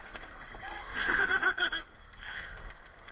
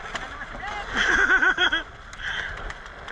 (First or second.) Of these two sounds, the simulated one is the first